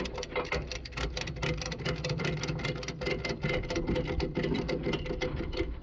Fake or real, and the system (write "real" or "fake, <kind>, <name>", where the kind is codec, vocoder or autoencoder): real